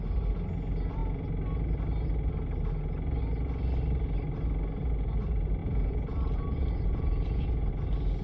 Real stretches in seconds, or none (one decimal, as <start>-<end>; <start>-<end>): 0.0-5.6; 7.7-8.2

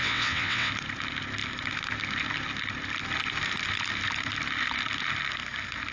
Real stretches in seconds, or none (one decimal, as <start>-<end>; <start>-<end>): 0.7-5.9

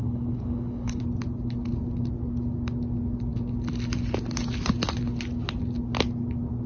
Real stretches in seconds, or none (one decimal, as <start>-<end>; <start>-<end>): 1.0-6.7